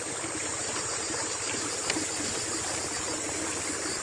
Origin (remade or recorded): remade